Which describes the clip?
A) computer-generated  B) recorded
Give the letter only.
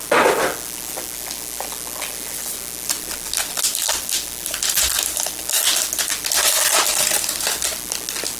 B